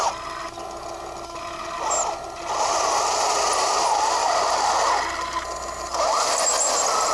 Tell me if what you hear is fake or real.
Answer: real